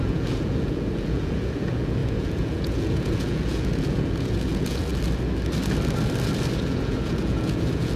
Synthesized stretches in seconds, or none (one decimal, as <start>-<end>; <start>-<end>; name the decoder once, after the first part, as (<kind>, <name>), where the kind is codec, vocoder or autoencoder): 0.0-4.9 (vocoder, Vocos); 6.5-8.0